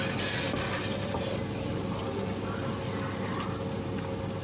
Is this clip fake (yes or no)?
no